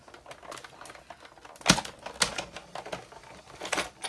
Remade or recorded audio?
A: recorded